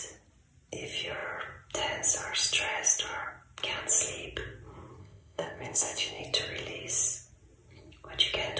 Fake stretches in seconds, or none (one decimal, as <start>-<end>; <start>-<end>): 5.0-6.2